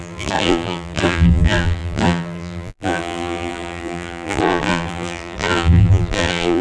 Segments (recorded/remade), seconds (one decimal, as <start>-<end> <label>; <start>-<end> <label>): 0.0-6.6 remade